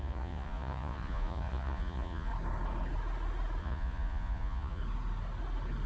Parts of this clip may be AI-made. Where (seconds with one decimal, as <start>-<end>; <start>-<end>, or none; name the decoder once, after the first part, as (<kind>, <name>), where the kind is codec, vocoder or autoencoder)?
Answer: 0.0-2.3 (vocoder, Vocos); 3.6-4.8

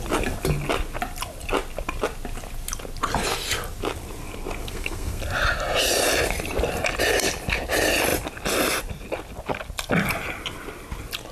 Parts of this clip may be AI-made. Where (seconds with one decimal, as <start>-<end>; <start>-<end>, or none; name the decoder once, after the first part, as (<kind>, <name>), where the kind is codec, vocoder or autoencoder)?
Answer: 4.6-5.2 (codec, SNAC)

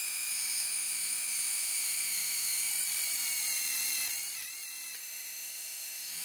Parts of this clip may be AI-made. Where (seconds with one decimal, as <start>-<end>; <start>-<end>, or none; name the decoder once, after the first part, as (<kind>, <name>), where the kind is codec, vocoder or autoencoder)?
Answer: 0.0-2.7 (autoencoder, DAC-VAE); 5.0-6.2

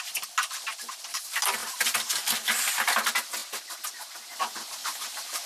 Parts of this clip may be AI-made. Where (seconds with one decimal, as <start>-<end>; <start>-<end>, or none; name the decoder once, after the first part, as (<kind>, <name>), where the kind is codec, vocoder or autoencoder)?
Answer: 1.6-2.7 (vocoder, BigVGAN v2); 4.8-5.5

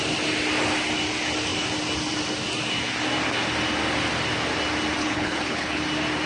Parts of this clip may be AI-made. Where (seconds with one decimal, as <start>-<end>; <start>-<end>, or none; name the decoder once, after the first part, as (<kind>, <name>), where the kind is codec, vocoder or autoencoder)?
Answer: 5.0-5.8 (codec, HILCodec)

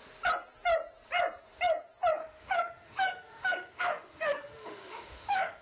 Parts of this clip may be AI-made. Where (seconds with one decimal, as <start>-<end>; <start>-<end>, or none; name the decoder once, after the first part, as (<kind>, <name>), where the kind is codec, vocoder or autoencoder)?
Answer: 2.2-5.6 (autoencoder, DAC-VAE)

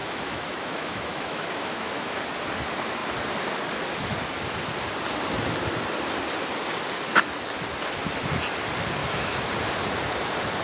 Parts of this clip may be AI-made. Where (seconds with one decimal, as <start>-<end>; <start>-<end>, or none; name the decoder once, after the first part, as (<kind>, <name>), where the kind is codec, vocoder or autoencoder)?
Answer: 0.0-2.2 (autoencoder, DAC-VAE); 9.0-9.5